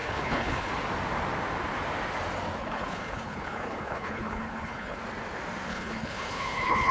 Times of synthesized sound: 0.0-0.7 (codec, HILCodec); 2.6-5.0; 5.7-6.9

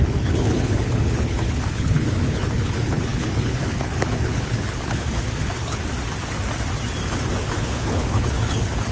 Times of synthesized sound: 0.0-5.8 (codec, HILCodec); 7.4-8.9

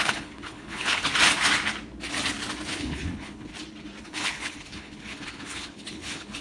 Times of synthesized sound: 0.0-1.1 (codec, HILCodec); 2.7-3.5; 4.0-6.4

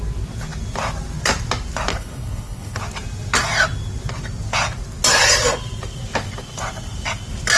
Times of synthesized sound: 1.9-2.8 (codec, HILCodec)

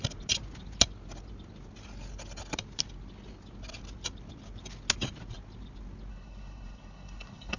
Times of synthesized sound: 6.1-7.6 (codec, HILCodec)